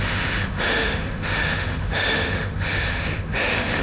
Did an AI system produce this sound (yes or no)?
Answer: yes